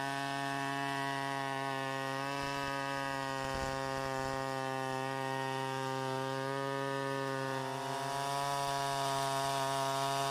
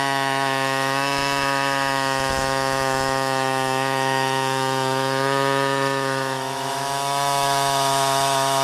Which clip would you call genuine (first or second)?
first